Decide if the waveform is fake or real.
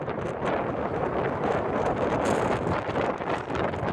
real